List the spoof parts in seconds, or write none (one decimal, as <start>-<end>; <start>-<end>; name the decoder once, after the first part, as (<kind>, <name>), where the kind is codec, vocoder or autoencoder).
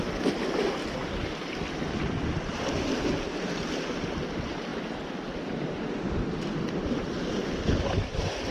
1.0-1.6 (vocoder, BigVGAN v2)